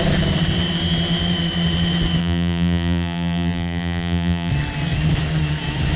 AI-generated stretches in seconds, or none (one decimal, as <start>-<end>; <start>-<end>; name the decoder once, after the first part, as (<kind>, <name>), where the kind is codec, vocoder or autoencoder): 2.2-4.5 (vocoder, BigVGAN v2)

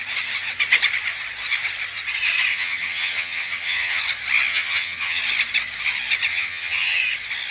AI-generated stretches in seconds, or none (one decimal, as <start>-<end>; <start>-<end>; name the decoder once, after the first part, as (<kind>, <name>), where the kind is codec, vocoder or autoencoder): 2.5-4.0 (vocoder, HiFi-GAN); 4.5-5.2; 6.3-7.0

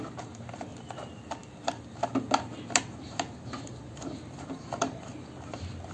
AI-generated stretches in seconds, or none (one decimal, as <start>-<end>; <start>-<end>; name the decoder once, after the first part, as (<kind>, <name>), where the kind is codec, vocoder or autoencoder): none

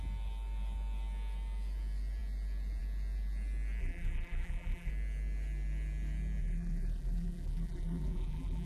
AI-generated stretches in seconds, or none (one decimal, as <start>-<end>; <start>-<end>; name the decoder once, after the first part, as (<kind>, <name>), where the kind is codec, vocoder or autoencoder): 3.8-4.9 (vocoder, BigVGAN v2); 6.4-8.7

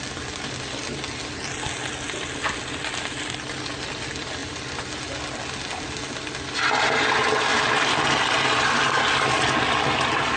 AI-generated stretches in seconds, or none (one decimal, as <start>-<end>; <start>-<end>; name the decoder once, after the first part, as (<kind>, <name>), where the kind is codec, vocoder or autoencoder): 7.5-8.0 (vocoder, BigVGAN v2)

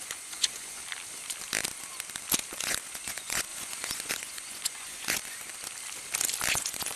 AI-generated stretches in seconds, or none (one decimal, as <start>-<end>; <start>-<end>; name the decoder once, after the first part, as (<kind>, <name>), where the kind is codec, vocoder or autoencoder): 0.0-0.8 (vocoder, Vocos); 2.5-5.5; 6.5-7.0